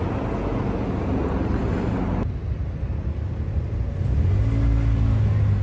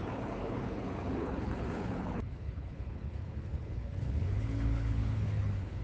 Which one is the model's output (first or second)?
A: second